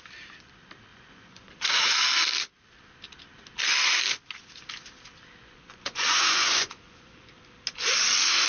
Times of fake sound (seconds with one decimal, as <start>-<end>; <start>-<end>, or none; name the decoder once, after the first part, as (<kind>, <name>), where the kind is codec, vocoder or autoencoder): 0.9-1.7 (vocoder, Vocos); 5.4-7.3